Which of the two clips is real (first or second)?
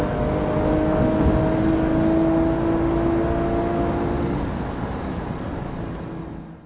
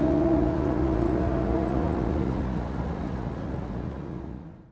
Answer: first